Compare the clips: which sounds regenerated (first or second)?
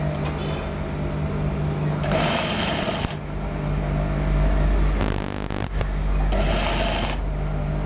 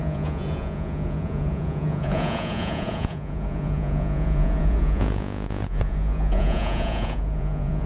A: second